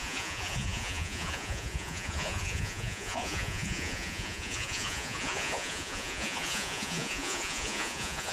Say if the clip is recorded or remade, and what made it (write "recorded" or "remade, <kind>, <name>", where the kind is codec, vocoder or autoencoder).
remade, vocoder, Vocos